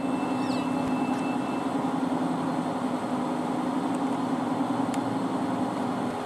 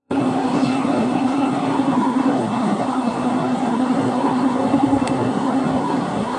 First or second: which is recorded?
first